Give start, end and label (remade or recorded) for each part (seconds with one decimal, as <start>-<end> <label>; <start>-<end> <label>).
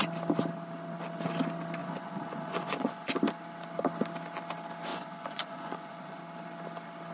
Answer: 0.0-1.8 recorded; 1.8-3.1 remade; 3.1-4.9 recorded; 4.9-6.2 remade; 6.2-7.1 recorded